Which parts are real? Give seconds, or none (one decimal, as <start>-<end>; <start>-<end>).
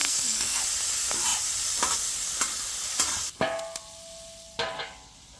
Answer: 0.6-5.4